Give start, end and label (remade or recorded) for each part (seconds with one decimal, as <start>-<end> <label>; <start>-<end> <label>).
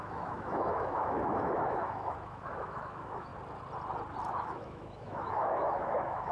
0.0-3.3 remade; 3.3-4.3 recorded; 4.3-6.3 remade